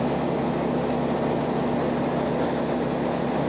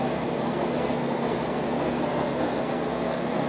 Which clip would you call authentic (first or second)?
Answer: first